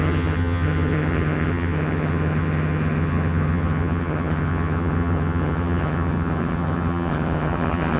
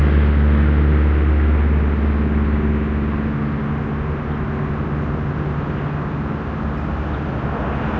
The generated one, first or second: first